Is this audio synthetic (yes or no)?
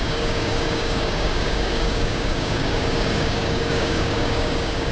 yes